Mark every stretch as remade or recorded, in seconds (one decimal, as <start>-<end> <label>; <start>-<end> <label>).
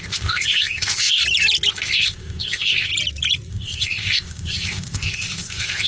0.0-1.2 remade; 1.2-1.7 recorded; 1.7-2.9 remade; 2.9-3.5 recorded; 3.5-5.9 remade